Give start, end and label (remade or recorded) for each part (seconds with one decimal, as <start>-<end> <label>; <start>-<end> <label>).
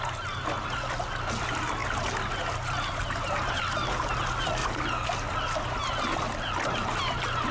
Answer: 0.0-7.5 recorded